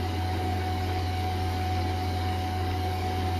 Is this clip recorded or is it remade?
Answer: remade